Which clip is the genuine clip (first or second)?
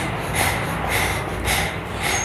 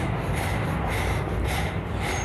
first